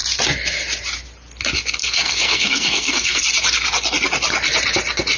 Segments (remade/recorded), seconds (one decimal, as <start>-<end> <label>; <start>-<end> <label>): 0.0-1.8 recorded; 1.8-3.2 remade; 3.2-5.2 recorded